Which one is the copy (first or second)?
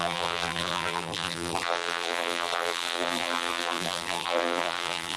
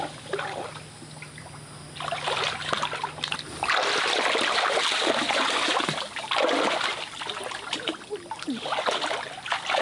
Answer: first